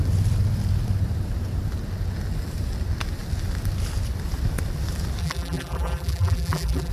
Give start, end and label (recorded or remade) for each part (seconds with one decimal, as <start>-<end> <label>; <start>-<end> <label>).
0.0-5.2 recorded; 5.2-6.9 remade